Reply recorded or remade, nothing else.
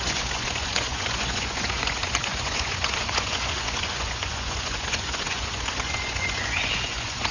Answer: remade